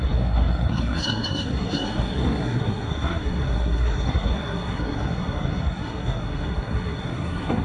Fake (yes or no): yes